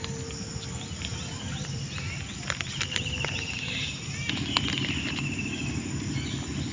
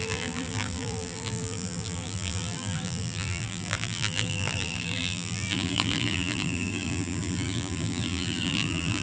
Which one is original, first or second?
first